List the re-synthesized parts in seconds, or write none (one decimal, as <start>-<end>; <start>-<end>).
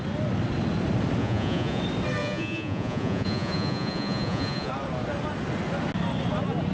1.2-1.8; 2.2-4.7